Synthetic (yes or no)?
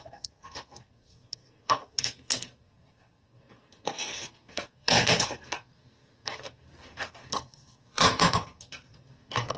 yes